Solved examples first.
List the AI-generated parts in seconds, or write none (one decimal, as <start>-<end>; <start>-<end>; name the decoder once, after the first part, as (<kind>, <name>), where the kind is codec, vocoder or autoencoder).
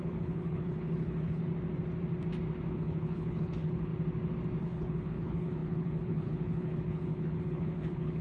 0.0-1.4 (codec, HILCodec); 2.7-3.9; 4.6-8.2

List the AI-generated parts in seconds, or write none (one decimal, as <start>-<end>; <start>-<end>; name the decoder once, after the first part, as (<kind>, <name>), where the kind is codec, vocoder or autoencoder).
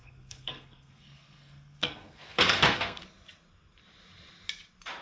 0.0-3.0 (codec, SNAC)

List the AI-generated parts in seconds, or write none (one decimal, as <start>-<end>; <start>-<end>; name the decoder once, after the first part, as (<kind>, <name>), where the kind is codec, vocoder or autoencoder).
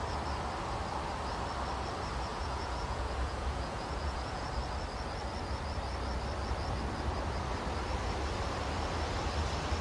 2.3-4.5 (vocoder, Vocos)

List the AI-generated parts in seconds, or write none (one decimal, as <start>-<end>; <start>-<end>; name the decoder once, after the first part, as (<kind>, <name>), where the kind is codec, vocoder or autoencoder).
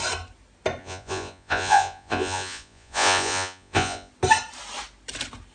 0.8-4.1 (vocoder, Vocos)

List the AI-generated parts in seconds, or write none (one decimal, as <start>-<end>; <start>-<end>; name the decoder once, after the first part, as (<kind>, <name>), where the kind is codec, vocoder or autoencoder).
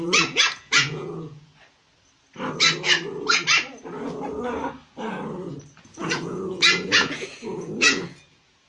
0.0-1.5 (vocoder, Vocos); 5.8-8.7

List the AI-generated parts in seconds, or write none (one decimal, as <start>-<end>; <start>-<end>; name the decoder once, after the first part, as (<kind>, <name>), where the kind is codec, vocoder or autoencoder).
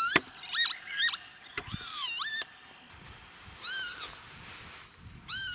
none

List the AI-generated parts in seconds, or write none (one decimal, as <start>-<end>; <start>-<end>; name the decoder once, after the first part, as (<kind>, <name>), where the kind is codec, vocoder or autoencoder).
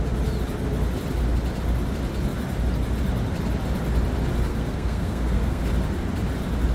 4.5-5.6 (codec, SNAC)